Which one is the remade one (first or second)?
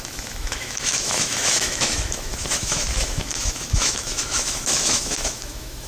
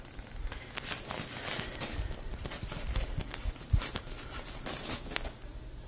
first